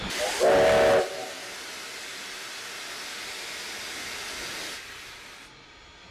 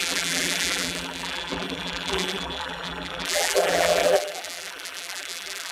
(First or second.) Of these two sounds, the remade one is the second